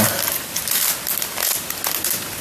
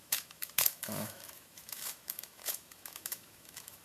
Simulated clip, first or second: second